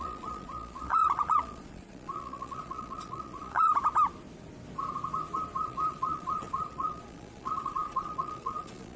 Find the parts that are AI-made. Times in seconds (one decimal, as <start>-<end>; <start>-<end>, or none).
0.0-3.7; 5.6-9.0